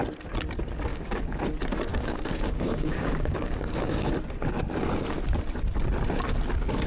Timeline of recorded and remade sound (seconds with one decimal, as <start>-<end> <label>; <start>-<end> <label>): 0.0-0.9 recorded; 0.9-1.4 remade; 1.4-1.9 recorded; 1.9-4.1 remade; 4.1-6.9 recorded